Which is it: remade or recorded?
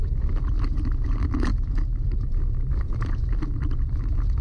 recorded